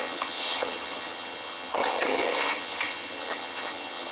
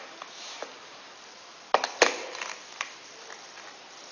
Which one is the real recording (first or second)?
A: second